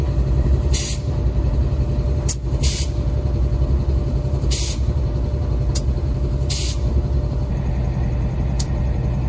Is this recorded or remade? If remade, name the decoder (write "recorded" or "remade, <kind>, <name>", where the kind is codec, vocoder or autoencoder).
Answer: recorded